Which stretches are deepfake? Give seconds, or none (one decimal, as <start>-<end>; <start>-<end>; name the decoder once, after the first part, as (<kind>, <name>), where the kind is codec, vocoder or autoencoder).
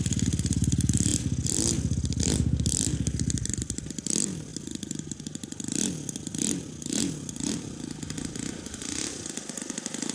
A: none